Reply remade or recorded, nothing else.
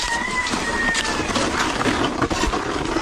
recorded